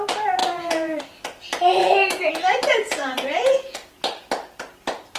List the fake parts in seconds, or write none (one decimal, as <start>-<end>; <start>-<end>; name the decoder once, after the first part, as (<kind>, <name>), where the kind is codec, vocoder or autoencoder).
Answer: 0.4-1.0 (vocoder, Vocos); 1.8-2.3; 2.7-4.0